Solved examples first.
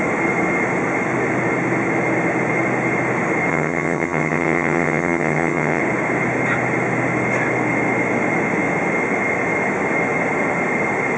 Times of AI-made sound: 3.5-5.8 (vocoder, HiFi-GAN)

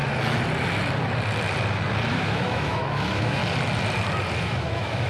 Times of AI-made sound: 2.1-3.4 (autoencoder, DAC-VAE); 4.4-5.1

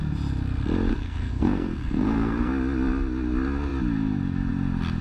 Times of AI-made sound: 0.9-2.5 (codec, SNAC)

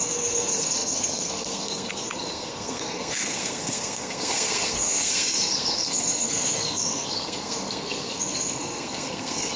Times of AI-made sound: 0.0-9.6 (codec, SNAC)

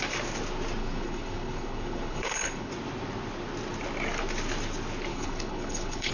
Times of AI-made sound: 0.8-2.7 (codec, HILCodec); 5.1-6.1

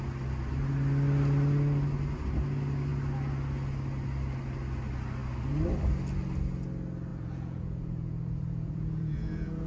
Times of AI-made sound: 7.1-9.7 (vocoder, Vocos)

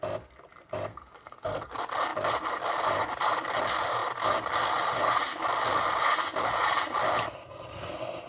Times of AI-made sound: 0.9-1.7 (codec, SNAC)

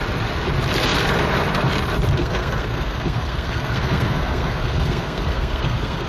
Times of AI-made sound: 2.2-6.1 (codec, SNAC)